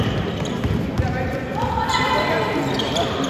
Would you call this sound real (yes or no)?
yes